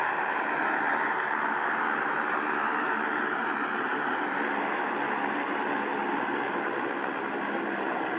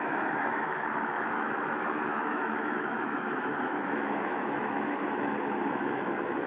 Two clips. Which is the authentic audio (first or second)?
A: first